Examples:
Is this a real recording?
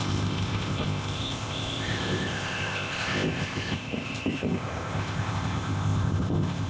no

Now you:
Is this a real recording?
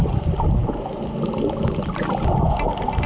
yes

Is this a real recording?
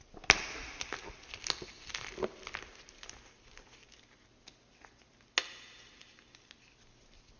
yes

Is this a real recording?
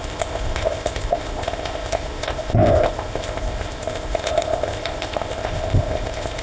no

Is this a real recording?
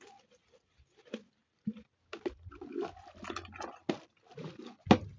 yes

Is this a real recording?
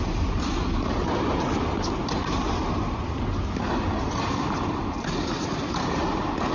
yes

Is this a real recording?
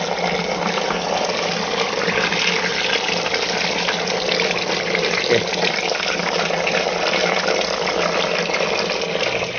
yes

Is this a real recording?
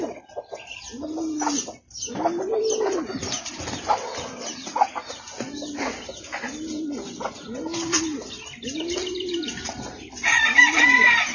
yes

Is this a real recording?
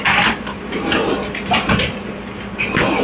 yes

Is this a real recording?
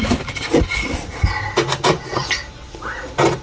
yes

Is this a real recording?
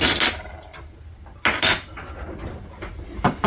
yes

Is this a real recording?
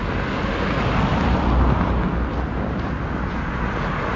yes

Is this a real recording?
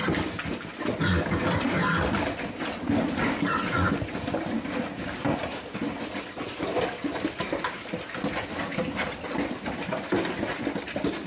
yes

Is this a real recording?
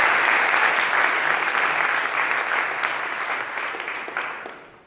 yes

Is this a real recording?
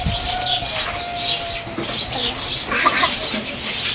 yes